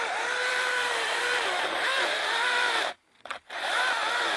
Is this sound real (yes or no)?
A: no